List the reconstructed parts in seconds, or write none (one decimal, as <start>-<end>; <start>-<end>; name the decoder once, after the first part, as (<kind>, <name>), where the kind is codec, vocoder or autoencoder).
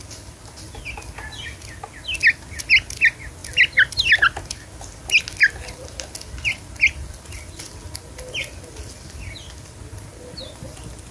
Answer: none